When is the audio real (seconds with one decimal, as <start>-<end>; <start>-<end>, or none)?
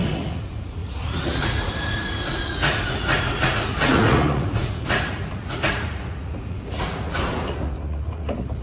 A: none